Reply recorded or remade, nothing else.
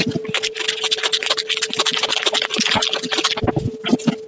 recorded